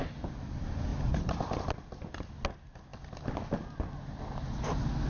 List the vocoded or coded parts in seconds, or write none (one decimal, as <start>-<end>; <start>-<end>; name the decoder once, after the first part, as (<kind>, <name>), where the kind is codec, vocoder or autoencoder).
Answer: 0.9-1.6 (vocoder, BigVGAN v2)